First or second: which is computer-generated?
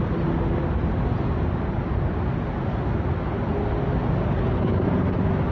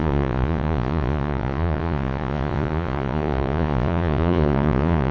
second